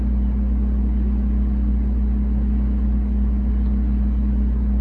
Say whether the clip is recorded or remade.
recorded